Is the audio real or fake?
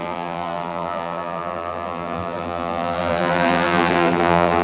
fake